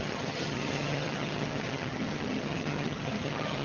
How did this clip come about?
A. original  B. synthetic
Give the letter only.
B